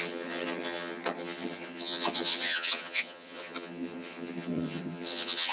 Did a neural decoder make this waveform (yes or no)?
yes